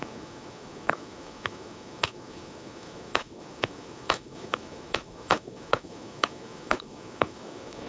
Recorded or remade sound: remade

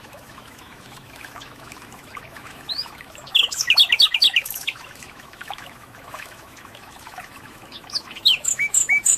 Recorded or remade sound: remade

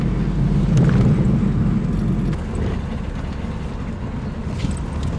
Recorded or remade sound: recorded